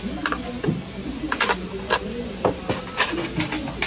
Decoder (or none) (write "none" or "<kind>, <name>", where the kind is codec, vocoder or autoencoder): none